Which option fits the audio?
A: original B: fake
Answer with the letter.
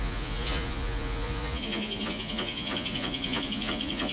B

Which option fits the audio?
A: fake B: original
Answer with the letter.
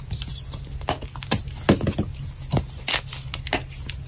B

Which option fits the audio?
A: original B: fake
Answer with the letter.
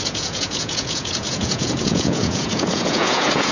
B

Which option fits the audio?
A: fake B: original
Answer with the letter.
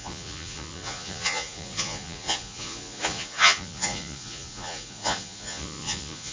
A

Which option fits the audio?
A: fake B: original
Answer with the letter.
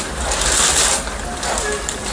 B